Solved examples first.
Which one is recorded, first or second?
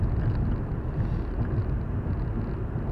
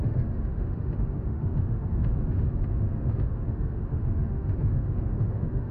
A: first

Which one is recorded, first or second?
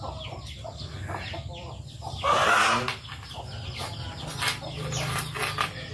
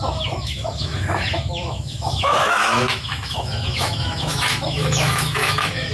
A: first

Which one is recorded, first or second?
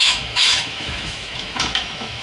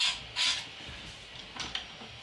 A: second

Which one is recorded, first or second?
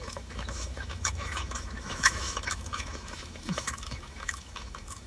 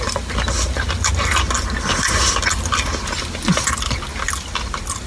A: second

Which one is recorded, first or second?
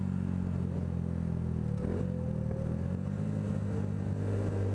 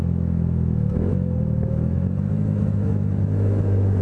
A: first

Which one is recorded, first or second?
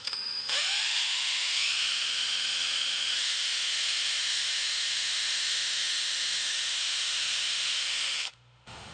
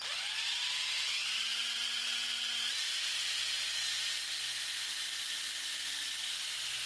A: second